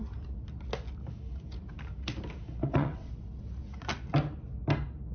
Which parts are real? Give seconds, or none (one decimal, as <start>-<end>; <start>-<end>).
0.0-2.6; 3.1-5.1